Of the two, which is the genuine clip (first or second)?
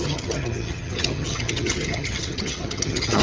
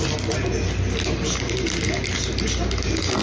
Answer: second